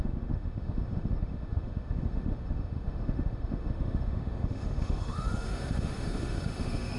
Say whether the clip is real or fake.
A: fake